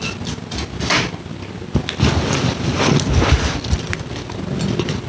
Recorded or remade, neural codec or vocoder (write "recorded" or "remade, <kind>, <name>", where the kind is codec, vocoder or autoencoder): recorded